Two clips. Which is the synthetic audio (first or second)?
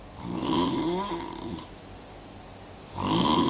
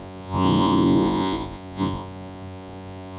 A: second